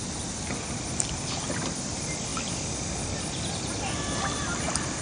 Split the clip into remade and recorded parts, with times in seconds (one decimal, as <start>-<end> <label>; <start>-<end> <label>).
0.0-5.0 recorded